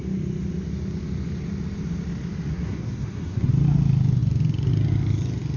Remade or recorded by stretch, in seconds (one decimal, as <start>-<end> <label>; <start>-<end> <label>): 0.0-2.5 recorded; 2.5-3.5 remade; 3.5-5.6 recorded